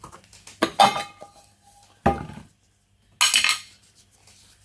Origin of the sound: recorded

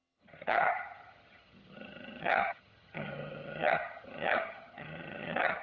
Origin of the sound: remade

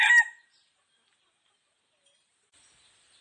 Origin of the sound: recorded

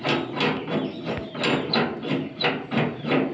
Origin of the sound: recorded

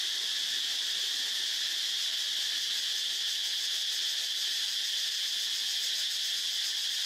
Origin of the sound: recorded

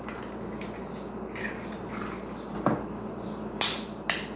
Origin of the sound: recorded